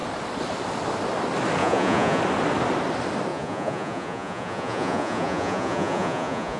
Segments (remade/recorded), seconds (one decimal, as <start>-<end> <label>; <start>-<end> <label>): 0.0-1.6 recorded; 1.6-2.2 remade; 2.2-3.3 recorded; 3.3-6.6 remade